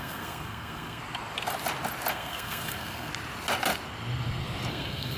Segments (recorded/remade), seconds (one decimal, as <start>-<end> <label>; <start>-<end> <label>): 0.0-1.0 remade; 1.0-2.1 recorded; 2.1-3.1 remade; 3.1-4.7 recorded; 4.7-5.2 remade